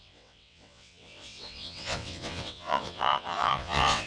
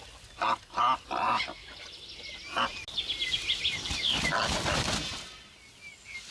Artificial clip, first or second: first